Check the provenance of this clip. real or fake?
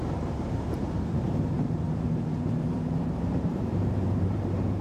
fake